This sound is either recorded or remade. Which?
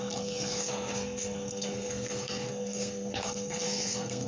remade